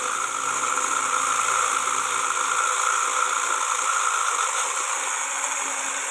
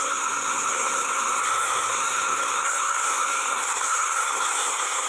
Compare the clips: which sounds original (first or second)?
first